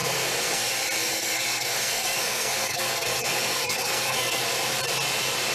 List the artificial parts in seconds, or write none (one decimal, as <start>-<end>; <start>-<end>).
0.0-0.7; 1.1-4.4